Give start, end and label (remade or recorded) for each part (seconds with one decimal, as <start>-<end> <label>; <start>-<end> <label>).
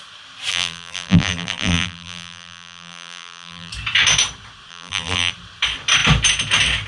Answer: 0.0-0.5 recorded; 0.5-3.7 remade; 3.7-4.7 recorded; 4.7-5.3 remade; 5.3-6.9 recorded